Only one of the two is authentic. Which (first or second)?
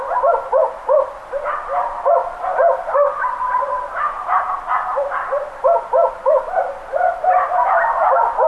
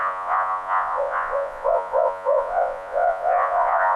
first